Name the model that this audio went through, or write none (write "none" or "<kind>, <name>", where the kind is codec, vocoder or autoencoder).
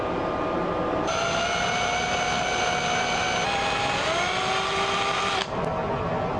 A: none